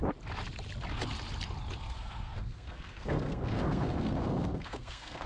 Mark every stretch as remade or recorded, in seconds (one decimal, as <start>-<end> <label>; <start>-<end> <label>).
0.0-1.8 recorded; 1.8-5.3 remade